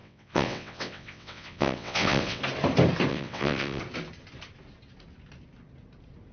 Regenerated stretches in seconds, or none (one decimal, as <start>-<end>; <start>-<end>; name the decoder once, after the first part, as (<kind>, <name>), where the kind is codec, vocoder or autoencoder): 0.0-2.4 (vocoder, WaveNeXt); 3.1-3.8